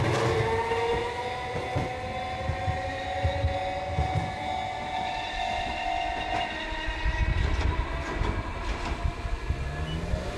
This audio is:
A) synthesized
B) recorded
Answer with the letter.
B